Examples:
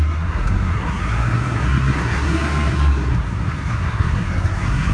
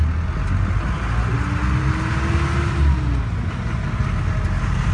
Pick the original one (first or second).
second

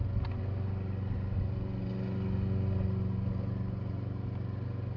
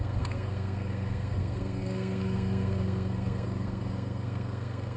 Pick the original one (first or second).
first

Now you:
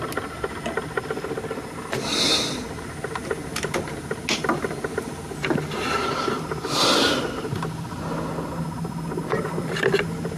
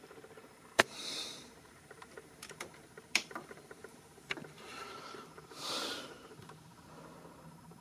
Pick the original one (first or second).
first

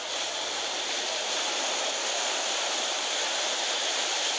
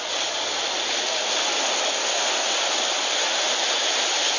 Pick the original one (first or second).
second